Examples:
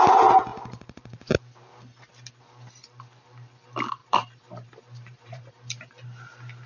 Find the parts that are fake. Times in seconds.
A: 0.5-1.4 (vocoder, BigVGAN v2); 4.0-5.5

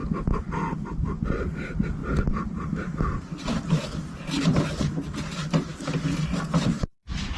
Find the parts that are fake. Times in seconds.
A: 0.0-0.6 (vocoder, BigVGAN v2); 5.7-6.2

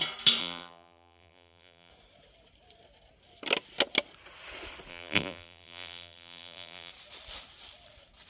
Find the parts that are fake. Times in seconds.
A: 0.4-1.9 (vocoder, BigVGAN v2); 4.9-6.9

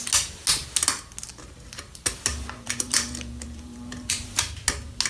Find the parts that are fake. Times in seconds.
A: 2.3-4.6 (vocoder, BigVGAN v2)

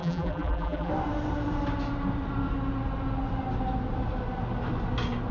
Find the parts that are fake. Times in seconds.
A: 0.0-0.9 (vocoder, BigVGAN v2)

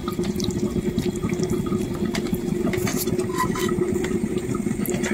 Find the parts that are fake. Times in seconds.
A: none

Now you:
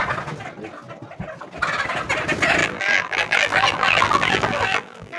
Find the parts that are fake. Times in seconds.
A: 2.6-5.2 (vocoder, BigVGAN v2)

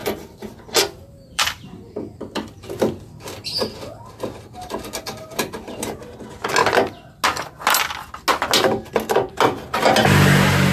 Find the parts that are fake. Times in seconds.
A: 0.0-2.7 (vocoder, BigVGAN v2)